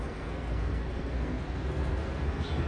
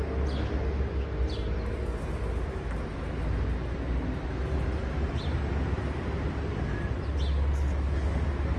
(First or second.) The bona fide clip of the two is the second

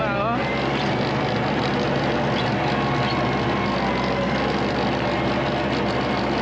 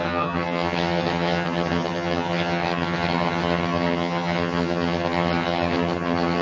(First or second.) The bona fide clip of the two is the first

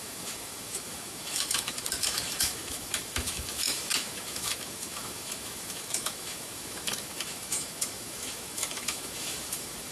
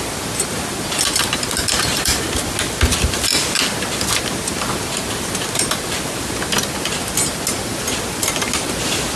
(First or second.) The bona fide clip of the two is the second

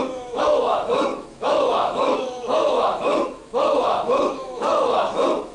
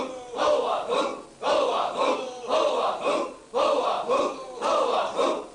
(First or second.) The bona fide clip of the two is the second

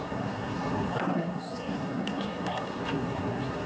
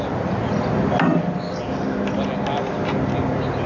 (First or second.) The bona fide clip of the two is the second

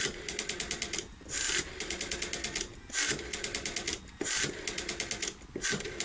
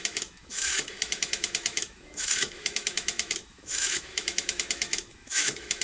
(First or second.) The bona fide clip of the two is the first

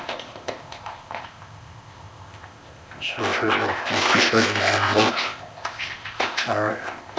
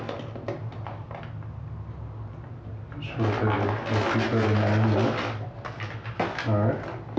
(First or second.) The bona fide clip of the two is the second